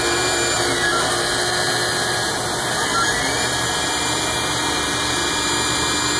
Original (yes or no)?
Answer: yes